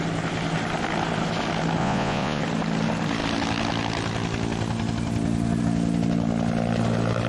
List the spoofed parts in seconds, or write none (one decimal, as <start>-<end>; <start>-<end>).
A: 1.8-2.4